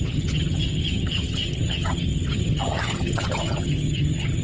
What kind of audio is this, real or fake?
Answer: fake